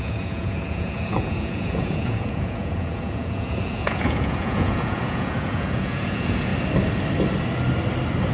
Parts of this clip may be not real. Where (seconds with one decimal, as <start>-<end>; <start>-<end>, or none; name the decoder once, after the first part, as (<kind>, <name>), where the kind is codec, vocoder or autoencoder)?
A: 0.0-6.5 (vocoder, Vocos)